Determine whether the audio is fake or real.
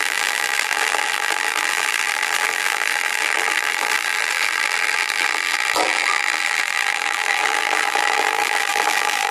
fake